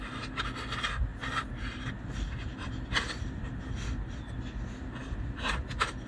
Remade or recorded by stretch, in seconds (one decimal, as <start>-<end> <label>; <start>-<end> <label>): 0.0-1.1 recorded; 1.1-1.9 remade; 1.9-5.0 recorded; 5.0-5.5 remade; 5.5-6.1 recorded